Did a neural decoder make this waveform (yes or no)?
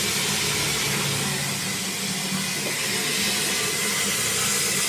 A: no